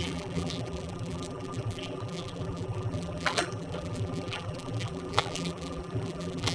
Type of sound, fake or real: fake